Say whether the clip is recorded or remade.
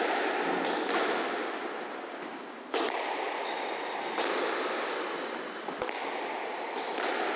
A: recorded